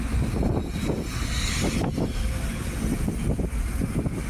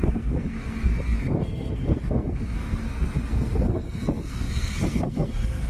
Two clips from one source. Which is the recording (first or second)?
first